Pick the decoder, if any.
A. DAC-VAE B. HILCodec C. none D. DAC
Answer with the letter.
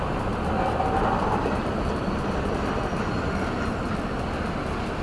C